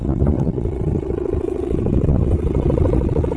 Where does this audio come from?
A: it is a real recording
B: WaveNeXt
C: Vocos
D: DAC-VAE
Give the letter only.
B